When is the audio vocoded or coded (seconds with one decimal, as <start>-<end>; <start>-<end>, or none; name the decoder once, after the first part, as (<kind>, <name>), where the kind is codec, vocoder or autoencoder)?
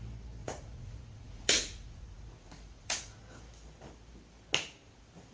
0.4-3.2 (vocoder, Vocos)